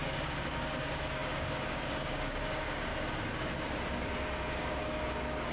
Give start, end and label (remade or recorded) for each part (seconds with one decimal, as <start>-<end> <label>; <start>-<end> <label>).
0.0-2.9 remade; 2.9-4.5 recorded; 4.5-5.5 remade